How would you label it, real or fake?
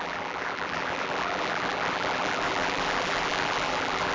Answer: fake